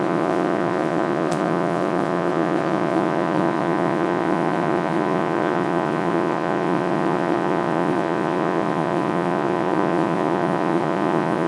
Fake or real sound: fake